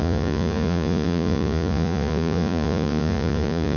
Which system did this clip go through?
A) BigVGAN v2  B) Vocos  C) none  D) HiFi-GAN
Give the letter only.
B